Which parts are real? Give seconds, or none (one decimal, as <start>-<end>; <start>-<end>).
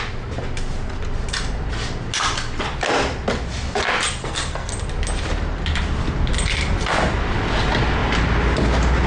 0.0-4.2; 4.7-9.1